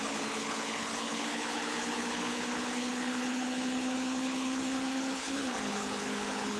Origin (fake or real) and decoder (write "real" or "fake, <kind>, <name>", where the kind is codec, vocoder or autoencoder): fake, codec, HILCodec